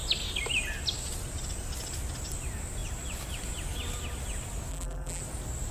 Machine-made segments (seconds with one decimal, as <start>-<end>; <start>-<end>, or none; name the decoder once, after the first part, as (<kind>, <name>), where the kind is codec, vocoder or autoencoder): 4.7-5.2 (vocoder, BigVGAN v2)